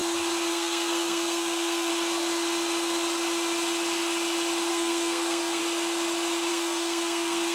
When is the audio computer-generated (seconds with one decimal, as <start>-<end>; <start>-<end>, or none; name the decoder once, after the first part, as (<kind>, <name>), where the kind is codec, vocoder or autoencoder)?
0.5-1.9 (codec, SNAC); 4.7-5.6; 6.5-7.5